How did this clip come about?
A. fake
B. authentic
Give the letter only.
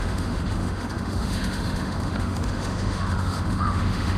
A